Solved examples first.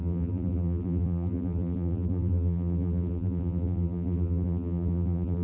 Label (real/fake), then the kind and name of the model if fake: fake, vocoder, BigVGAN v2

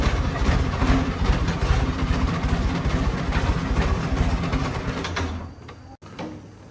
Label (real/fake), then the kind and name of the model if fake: real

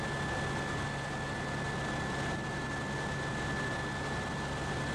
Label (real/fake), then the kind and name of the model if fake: real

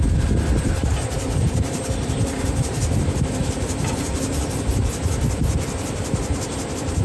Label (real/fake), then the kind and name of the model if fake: fake, vocoder, BigVGAN v2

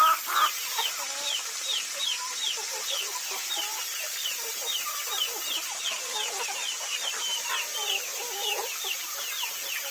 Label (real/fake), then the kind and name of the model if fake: real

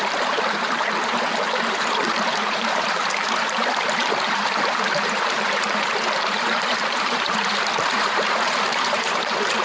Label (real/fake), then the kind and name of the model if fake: fake, vocoder, BigVGAN v2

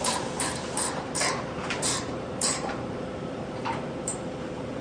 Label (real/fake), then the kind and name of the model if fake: fake, vocoder, BigVGAN v2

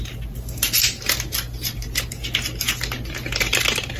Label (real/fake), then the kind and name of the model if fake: real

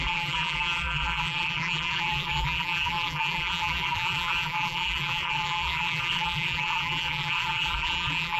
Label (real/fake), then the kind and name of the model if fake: fake, vocoder, BigVGAN v2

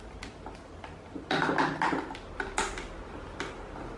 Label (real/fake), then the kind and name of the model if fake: real